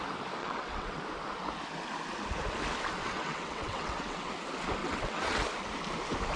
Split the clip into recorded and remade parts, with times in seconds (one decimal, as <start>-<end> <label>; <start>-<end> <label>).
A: 0.0-0.4 recorded; 0.4-1.0 remade; 1.0-3.0 recorded; 3.0-4.3 remade; 4.3-4.8 recorded; 4.8-5.4 remade; 5.4-6.4 recorded